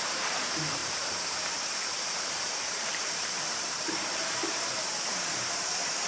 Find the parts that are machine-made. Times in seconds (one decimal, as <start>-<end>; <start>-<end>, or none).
0.0-6.1